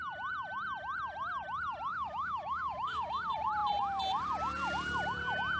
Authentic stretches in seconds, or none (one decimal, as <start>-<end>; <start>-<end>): 0.0-1.9; 3.1-5.6